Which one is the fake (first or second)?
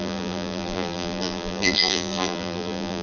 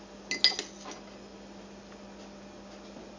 first